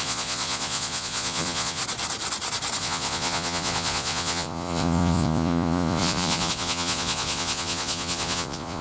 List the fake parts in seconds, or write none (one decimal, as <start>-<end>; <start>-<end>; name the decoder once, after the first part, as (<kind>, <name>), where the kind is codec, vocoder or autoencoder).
0.0-1.8 (vocoder, Vocos); 2.8-8.8